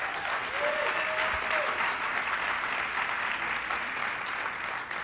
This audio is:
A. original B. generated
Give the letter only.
A